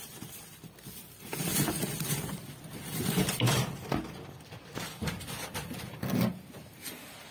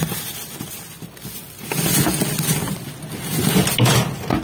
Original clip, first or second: second